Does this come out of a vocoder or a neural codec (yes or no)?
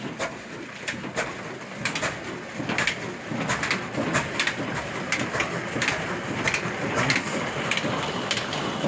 no